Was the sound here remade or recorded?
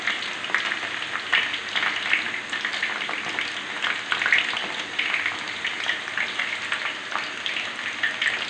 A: recorded